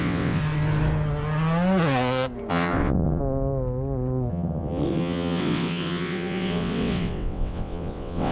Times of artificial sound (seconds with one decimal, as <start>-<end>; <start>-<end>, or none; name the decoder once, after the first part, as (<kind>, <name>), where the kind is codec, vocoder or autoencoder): 0.0-0.4 (vocoder, WaveNeXt); 2.5-3.2; 4.3-8.3